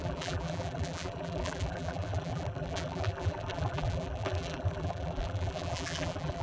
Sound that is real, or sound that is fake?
fake